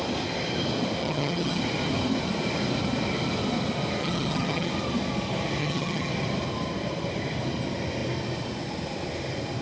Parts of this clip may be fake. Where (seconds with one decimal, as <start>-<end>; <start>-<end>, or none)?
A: 1.0-1.6; 4.0-4.7; 5.6-6.1